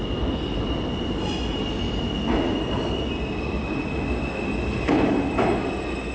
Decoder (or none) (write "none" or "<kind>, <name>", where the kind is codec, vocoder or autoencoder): none